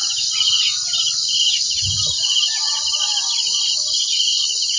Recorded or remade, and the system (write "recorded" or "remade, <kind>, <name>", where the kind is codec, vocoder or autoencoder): recorded